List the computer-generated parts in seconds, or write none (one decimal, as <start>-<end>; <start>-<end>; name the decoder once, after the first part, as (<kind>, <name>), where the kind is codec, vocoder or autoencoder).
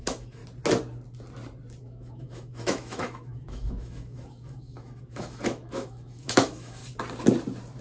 0.0-0.4 (autoencoder, DAC-VAE); 1.8-6.8